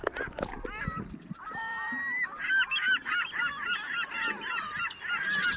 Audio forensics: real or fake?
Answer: real